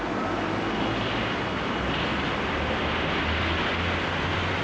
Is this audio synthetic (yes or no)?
no